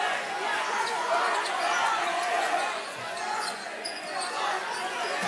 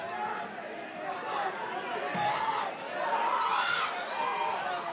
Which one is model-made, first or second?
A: first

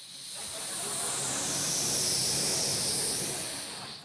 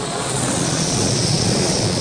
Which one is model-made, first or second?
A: second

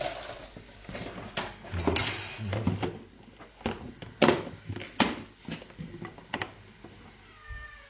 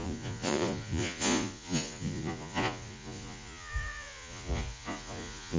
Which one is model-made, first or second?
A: second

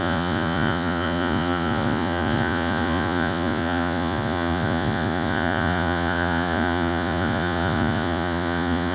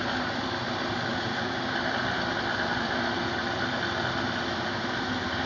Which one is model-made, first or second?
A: first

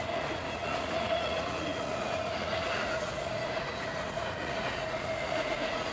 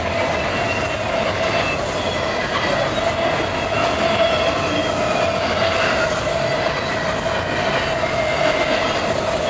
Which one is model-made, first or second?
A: first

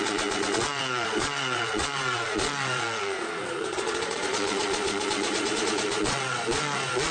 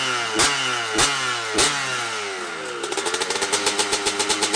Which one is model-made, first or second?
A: first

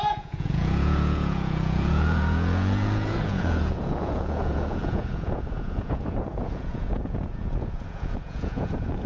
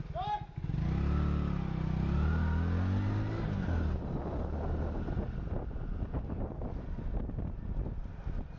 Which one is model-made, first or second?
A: first